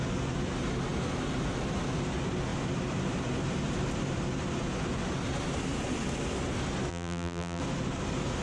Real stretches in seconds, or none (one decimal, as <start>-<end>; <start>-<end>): 0.0-6.9; 7.6-8.4